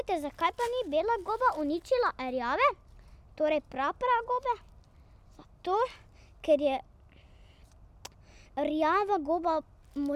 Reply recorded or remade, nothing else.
recorded